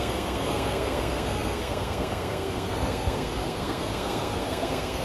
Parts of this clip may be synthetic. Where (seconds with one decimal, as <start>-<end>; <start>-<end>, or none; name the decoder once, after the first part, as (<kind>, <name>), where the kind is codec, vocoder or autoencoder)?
0.0-5.0 (codec, SNAC)